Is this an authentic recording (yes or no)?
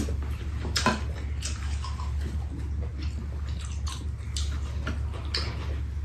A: yes